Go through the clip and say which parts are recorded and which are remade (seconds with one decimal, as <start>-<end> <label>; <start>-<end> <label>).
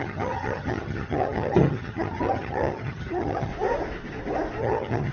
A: 0.0-3.5 remade; 3.5-4.6 recorded; 4.6-5.1 remade